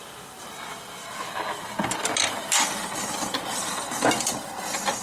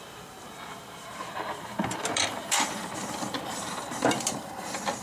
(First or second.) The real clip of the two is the first